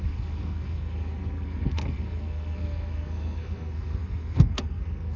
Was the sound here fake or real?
fake